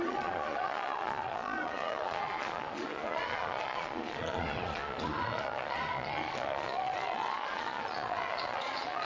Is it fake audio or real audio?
fake